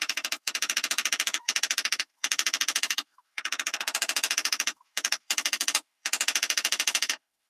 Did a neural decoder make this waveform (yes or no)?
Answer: yes